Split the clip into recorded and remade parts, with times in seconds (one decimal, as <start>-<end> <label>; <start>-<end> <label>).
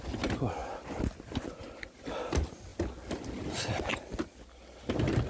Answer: 0.0-5.3 recorded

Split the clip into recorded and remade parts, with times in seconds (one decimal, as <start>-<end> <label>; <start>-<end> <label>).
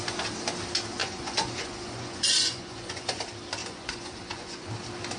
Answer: 0.0-1.0 recorded; 1.0-3.2 remade; 3.2-3.6 recorded; 3.6-4.7 remade; 4.7-5.2 recorded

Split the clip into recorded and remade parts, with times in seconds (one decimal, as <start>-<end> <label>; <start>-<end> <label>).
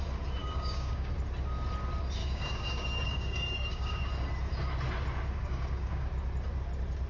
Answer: 0.0-0.4 recorded; 0.4-1.1 remade; 1.1-2.2 recorded; 2.2-4.1 remade; 4.1-5.4 recorded; 5.4-6.1 remade; 6.1-7.1 recorded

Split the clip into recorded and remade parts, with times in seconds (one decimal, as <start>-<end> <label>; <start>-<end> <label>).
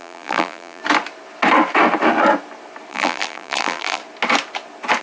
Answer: 0.0-0.8 remade; 0.8-2.9 recorded; 2.9-4.0 remade; 4.0-5.0 recorded